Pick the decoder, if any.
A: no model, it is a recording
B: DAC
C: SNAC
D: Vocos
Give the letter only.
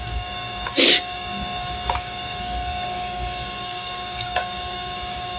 B